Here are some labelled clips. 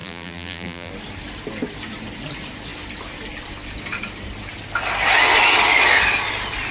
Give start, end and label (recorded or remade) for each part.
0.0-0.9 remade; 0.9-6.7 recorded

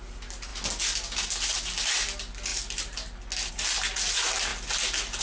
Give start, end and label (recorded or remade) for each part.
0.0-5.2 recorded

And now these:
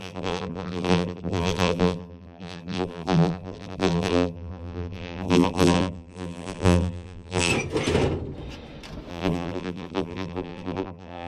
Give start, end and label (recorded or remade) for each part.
0.0-7.5 remade; 7.5-9.1 recorded; 9.1-11.3 remade